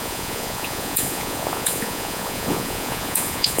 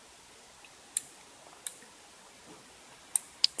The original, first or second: second